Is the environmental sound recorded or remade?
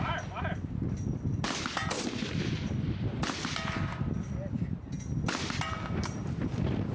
recorded